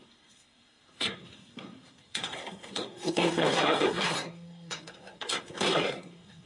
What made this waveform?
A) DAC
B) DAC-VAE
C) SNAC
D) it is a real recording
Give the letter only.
C